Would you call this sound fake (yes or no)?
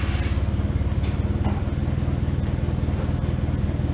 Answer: no